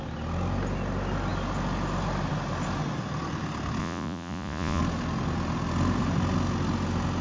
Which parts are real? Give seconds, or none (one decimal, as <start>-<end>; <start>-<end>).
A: 0.0-3.8; 4.8-7.2

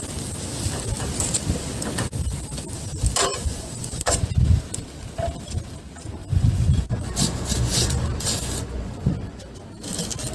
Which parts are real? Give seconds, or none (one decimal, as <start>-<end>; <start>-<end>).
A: 0.0-3.3; 4.2-6.2; 9.4-10.3

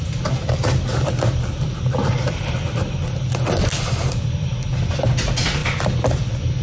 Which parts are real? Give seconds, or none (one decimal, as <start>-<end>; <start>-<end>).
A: 0.0-6.6